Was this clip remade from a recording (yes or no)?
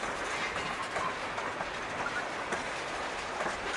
no